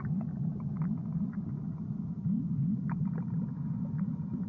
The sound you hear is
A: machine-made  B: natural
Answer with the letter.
B